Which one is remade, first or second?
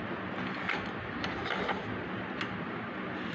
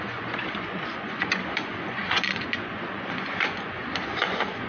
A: second